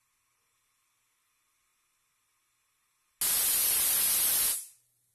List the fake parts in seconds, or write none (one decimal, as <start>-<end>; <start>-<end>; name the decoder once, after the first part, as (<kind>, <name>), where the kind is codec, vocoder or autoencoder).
none